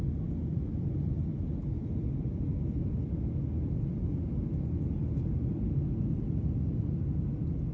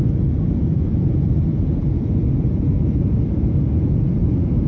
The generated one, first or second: second